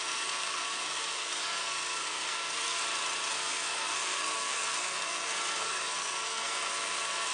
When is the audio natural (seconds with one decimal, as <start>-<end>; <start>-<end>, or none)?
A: 2.8-3.3